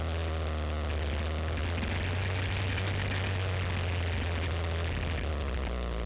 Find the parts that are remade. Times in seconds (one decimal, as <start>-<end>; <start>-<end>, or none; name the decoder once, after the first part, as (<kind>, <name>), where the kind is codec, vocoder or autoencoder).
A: none